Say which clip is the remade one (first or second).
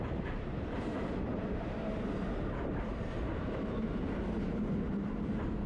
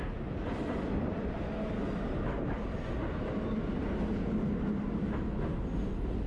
first